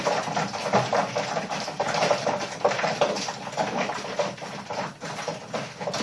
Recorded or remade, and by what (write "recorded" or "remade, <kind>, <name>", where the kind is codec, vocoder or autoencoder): recorded